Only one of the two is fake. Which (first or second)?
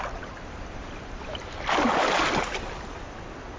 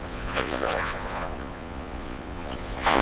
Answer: second